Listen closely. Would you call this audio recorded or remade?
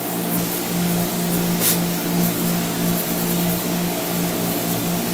remade